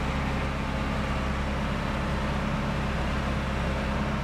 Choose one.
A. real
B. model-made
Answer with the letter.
A